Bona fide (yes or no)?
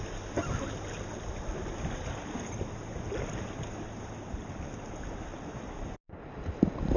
yes